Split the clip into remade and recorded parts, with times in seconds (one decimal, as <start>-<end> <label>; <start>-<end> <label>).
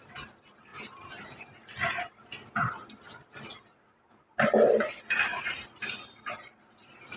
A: 0.0-7.2 recorded